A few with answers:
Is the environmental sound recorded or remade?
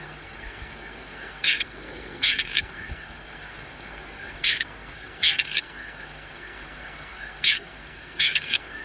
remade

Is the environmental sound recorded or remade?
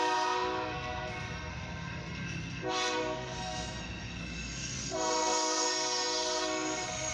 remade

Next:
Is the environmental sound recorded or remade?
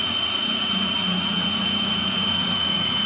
remade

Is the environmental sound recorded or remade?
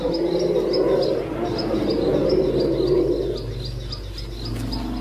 recorded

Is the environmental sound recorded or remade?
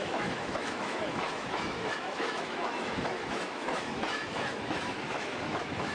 remade